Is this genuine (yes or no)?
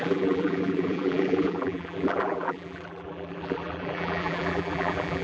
no